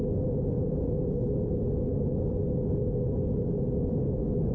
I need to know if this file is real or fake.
real